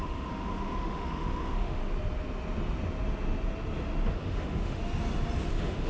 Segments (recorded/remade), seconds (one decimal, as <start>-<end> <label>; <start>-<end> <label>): 0.0-1.8 remade; 1.8-4.1 recorded; 4.1-4.8 remade; 4.8-5.5 recorded; 5.5-5.9 remade